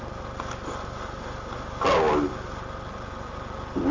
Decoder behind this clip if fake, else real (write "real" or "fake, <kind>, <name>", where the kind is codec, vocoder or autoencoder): real